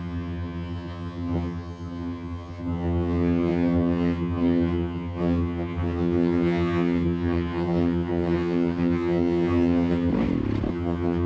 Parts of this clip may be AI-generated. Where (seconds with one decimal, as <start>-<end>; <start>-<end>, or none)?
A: 0.0-10.1; 10.7-11.3